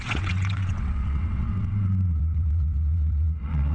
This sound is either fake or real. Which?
fake